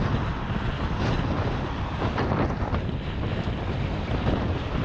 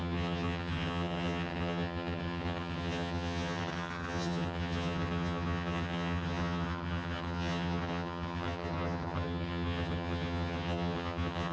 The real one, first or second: first